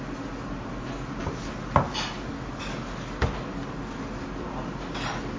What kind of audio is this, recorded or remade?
recorded